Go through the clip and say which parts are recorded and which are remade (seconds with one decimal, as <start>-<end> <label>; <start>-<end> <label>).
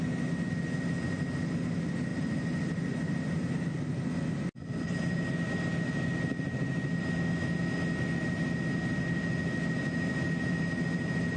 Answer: 0.0-11.4 recorded